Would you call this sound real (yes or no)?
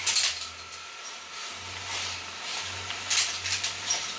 yes